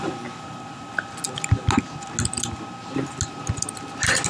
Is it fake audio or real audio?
real